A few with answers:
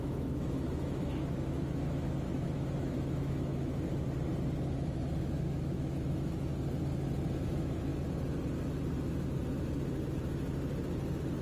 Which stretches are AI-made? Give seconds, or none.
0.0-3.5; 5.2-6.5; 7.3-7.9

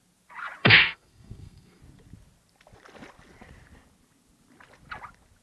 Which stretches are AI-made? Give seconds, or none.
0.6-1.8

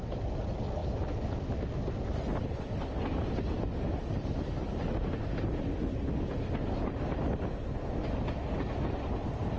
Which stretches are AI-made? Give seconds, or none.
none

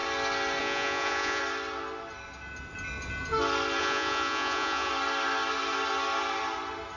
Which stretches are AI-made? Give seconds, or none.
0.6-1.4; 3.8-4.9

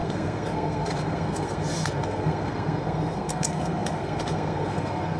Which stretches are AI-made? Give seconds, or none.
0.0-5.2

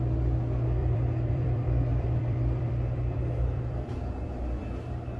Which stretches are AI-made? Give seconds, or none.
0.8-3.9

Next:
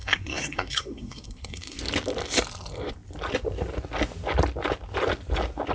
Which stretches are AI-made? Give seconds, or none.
0.0-1.8

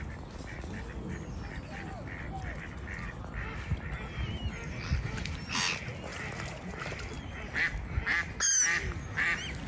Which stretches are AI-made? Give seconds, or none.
none